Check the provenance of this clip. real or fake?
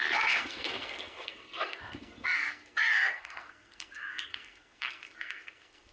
fake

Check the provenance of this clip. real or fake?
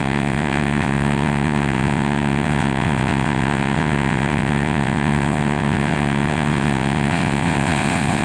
fake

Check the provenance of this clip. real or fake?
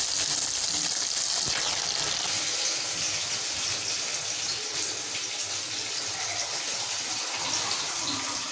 real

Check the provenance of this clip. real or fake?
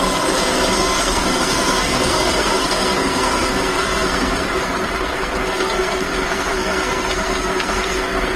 fake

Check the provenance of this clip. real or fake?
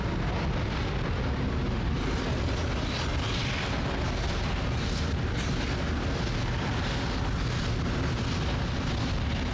real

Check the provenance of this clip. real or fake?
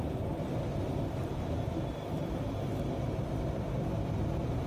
real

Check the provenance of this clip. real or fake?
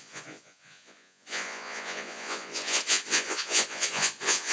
fake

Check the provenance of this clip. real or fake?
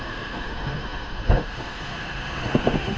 fake